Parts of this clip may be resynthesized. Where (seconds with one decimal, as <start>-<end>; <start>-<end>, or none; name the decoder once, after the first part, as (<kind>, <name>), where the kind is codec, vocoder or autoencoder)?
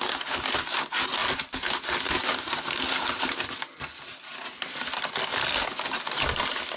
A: none